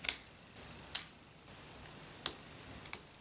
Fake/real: real